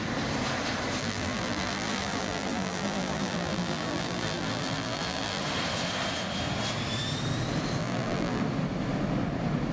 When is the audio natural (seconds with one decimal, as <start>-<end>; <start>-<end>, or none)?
0.0-1.0; 5.4-7.8; 8.4-9.7